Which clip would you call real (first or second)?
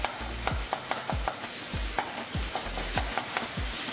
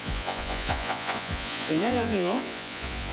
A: first